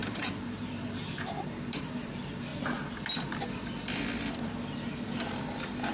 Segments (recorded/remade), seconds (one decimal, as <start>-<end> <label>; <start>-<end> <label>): 0.0-2.5 remade; 2.5-5.4 recorded; 5.4-5.9 remade